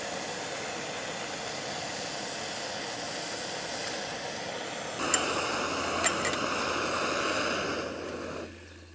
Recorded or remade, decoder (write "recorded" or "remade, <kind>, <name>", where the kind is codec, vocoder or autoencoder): recorded